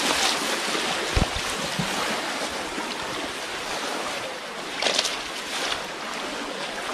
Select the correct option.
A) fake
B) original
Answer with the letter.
B